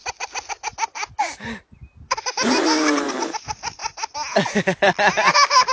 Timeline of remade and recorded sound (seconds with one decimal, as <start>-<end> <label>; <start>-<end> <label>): 0.0-1.2 recorded; 1.2-3.8 remade; 3.8-5.7 recorded